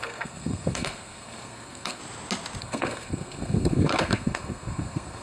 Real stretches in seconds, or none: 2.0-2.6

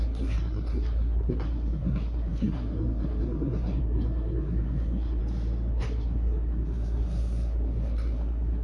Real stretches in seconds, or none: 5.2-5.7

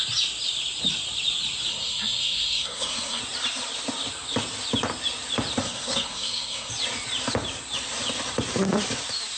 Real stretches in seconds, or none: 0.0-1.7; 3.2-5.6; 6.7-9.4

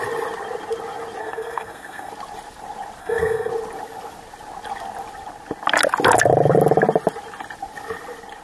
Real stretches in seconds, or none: 0.0-1.2; 2.1-3.0; 3.5-8.4

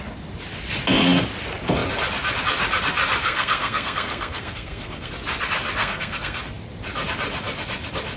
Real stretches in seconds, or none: 0.0-3.2; 5.1-5.8; 6.4-8.2